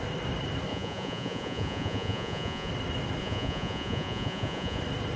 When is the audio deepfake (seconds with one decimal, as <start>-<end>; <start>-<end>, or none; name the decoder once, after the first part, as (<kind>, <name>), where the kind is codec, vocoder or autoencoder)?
0.7-2.7 (vocoder, Vocos); 3.2-4.8